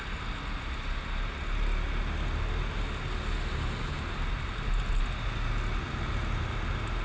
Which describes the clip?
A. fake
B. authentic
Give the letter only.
B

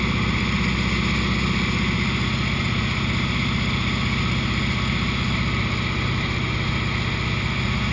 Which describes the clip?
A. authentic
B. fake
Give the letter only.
A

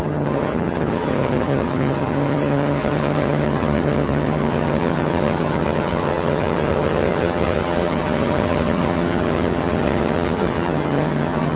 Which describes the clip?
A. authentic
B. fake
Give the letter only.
B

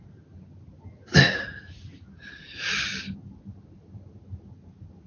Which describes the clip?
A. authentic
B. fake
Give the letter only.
A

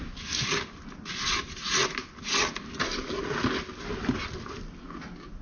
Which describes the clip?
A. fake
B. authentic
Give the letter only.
B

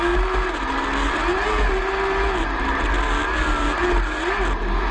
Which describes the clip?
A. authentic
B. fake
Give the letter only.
A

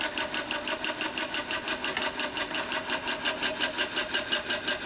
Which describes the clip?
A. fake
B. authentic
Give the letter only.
B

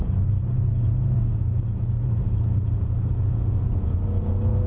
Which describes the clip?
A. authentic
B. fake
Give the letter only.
B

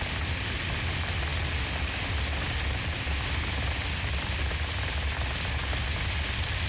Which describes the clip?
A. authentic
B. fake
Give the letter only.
B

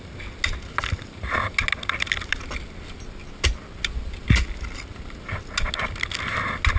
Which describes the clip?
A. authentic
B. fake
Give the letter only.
A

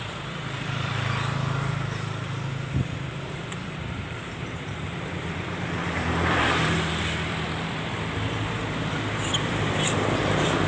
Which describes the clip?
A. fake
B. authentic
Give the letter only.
A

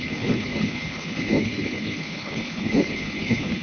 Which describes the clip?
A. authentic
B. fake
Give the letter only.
B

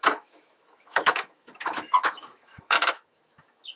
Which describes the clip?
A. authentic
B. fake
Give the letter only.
B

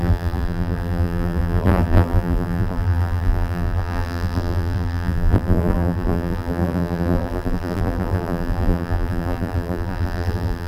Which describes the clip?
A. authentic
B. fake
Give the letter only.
B